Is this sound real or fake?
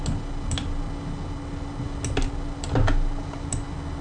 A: real